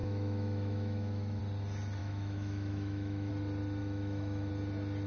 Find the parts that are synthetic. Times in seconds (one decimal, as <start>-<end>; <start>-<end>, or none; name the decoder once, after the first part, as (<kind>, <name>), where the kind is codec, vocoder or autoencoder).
0.0-1.4 (autoencoder, DAC-VAE); 2.0-3.3; 3.8-4.5